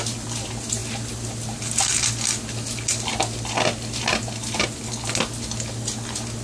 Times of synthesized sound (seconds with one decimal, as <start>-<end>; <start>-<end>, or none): none

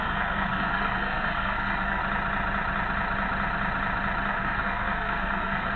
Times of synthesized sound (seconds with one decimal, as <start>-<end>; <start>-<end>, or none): 0.0-2.0; 4.3-5.8